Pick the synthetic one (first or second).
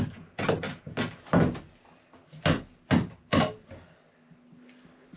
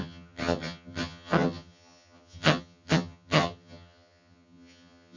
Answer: second